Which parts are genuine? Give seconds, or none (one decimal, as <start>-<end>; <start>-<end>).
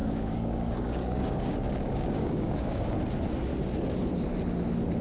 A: 3.0-5.0